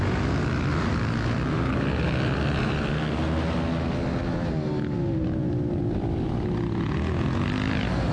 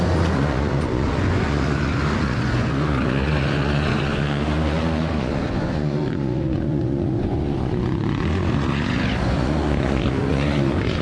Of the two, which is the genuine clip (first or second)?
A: first